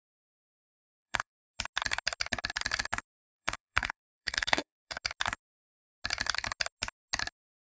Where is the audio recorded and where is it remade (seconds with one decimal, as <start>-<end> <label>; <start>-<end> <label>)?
0.0-0.5 recorded; 0.5-1.6 remade; 1.6-3.3 recorded; 3.3-5.0 remade; 5.0-7.7 recorded